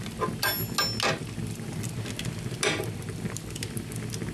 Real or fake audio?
real